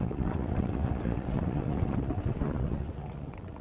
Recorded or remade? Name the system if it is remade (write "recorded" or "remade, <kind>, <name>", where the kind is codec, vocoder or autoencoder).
remade, vocoder, WaveNeXt